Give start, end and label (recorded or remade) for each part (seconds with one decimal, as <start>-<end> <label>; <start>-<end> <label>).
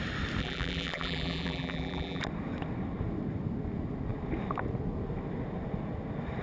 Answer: 0.0-0.4 recorded; 0.4-2.2 remade; 2.2-6.4 recorded